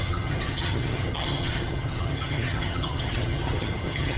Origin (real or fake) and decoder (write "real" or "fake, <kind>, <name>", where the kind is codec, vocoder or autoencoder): fake, vocoder, HiFi-GAN